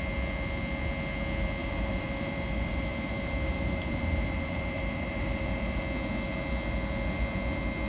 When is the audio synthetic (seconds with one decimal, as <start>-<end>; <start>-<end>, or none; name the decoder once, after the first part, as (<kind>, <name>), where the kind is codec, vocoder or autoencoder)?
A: 1.6-5.8 (vocoder, BigVGAN v2)